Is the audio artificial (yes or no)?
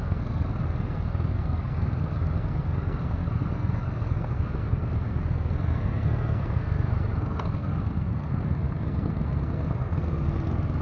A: yes